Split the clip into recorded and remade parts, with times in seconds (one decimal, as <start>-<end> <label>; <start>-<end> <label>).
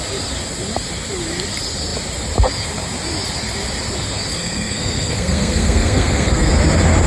0.0-4.3 recorded; 4.3-6.5 remade; 6.5-7.1 recorded